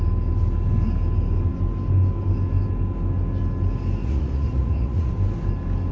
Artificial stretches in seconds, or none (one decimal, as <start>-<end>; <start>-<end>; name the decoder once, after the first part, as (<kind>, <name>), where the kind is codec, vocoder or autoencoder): 4.0-5.1 (vocoder, Vocos)